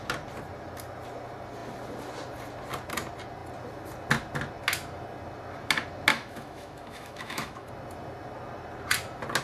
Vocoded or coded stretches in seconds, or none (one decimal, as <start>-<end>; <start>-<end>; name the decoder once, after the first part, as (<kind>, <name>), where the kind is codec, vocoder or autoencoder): 6.1-7.7 (autoencoder, DAC-VAE)